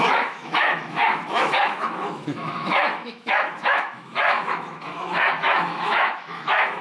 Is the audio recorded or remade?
remade